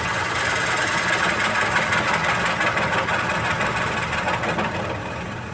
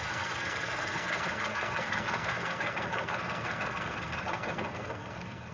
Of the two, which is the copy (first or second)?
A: second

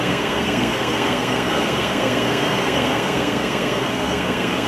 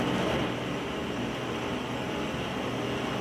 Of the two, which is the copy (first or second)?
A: first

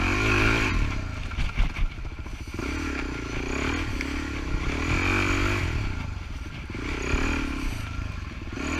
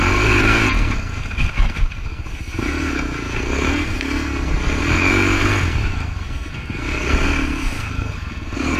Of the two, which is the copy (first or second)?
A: second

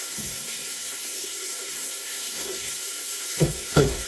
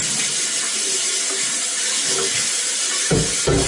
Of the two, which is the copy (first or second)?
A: first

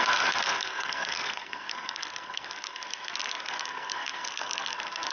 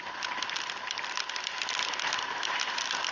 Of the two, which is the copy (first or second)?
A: first